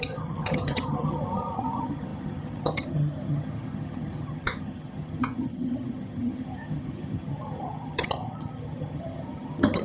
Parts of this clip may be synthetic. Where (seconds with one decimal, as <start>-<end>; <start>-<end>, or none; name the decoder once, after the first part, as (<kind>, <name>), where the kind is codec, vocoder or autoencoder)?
0.0-9.8 (vocoder, HiFi-GAN)